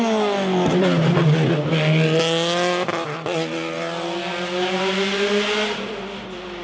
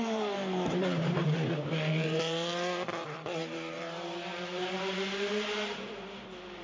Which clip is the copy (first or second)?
second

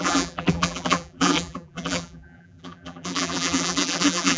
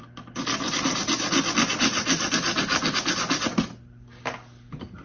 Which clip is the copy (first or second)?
first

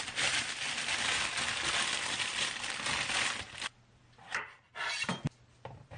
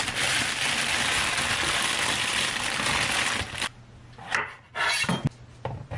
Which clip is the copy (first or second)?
first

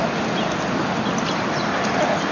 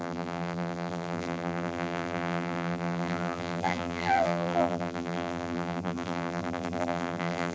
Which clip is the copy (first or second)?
second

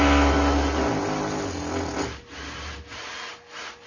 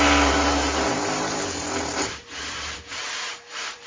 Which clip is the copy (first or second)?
second